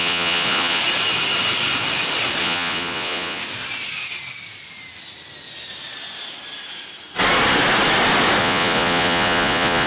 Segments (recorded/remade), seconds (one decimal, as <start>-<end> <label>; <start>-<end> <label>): 0.0-0.8 remade; 0.8-2.4 recorded; 2.4-3.4 remade; 3.4-8.4 recorded; 8.4-9.9 remade